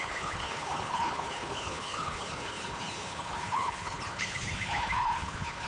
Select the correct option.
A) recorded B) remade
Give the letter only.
B